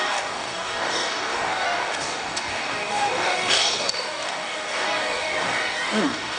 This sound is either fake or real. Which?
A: fake